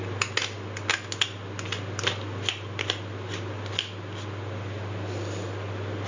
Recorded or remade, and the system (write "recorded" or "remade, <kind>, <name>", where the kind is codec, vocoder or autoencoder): recorded